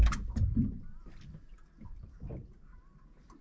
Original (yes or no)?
yes